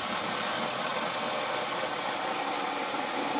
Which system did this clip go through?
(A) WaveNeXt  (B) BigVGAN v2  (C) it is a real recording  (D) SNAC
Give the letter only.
C